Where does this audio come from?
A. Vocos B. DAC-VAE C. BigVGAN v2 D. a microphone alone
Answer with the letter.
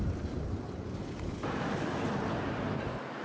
C